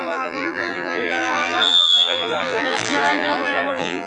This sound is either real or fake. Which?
fake